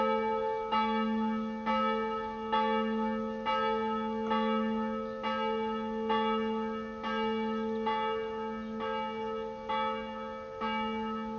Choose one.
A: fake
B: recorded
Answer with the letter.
B